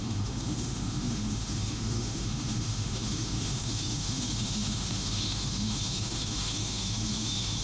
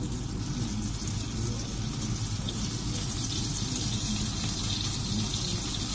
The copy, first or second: first